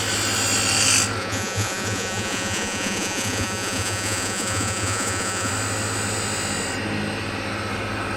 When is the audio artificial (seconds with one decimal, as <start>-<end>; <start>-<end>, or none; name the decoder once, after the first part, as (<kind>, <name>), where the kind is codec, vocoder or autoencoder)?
1.2-5.5 (vocoder, Vocos)